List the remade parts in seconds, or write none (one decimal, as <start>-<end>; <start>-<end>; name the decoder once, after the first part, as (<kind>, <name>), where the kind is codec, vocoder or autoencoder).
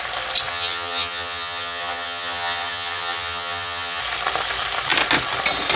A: 0.5-4.0 (vocoder, HiFi-GAN)